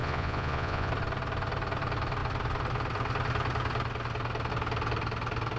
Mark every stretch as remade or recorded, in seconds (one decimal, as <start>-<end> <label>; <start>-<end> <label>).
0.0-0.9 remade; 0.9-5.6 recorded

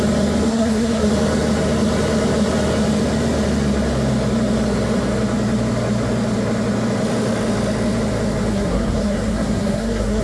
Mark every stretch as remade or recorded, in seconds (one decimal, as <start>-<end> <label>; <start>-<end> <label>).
0.0-0.5 recorded; 0.5-1.1 remade; 1.1-8.5 recorded; 8.5-10.2 remade

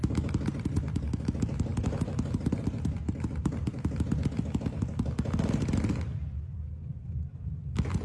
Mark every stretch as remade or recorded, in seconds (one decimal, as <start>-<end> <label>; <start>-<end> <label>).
0.0-8.0 recorded

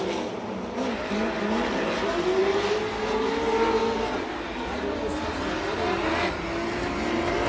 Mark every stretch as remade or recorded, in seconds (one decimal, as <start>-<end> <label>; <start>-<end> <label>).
0.0-7.5 recorded

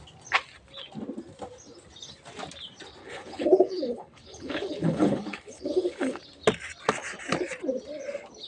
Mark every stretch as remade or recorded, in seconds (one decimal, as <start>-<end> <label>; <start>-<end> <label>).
0.0-3.0 recorded; 3.0-6.2 remade; 6.2-8.5 recorded